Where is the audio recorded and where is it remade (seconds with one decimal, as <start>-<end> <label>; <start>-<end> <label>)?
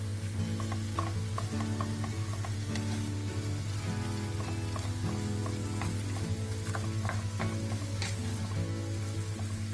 0.0-9.7 recorded